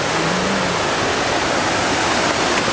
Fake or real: real